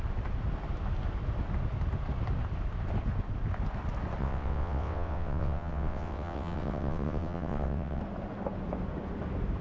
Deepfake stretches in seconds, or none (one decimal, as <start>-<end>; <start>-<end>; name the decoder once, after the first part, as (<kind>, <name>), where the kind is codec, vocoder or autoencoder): 4.2-8.0 (vocoder, WaveNeXt)